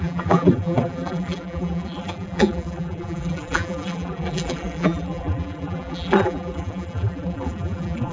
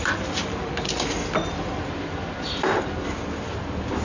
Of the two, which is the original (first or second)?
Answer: second